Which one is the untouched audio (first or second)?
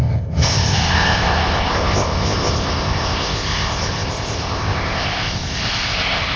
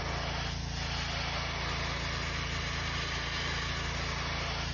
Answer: second